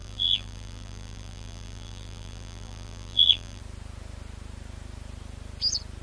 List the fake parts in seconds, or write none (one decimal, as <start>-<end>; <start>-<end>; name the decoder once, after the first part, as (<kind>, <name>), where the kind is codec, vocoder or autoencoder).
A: 0.0-3.6 (vocoder, BigVGAN v2)